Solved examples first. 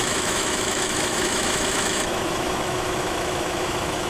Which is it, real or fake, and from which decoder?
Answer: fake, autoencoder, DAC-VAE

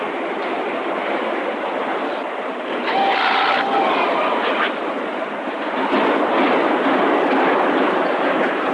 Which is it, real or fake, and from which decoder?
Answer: real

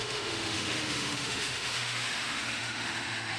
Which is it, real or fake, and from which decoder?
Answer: fake, autoencoder, DAC-VAE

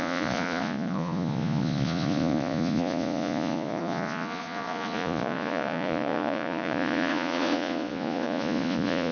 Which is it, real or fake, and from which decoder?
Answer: fake, vocoder, Vocos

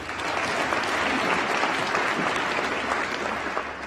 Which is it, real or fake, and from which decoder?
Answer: real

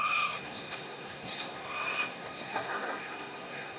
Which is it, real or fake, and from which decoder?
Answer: fake, codec, SNAC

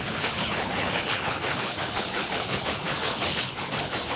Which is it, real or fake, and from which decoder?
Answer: fake, codec, HILCodec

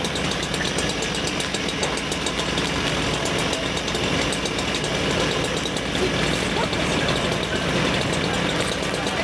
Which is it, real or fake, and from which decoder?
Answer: real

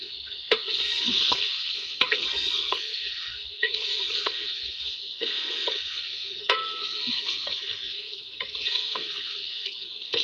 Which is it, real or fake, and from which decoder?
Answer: fake, codec, SNAC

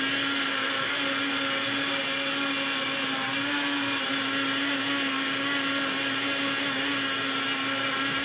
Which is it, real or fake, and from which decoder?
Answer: real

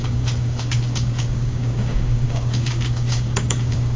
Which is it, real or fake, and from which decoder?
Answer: fake, codec, DAC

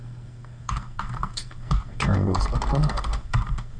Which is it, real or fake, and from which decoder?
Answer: fake, codec, SNAC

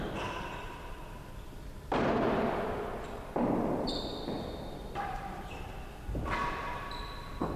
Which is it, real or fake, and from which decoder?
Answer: fake, vocoder, BigVGAN v2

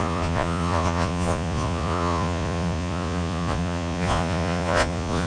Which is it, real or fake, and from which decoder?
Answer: fake, vocoder, Vocos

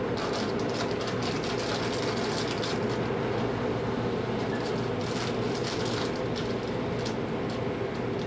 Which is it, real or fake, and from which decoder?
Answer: real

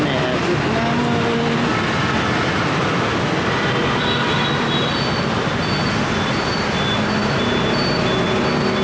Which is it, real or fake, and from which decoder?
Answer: real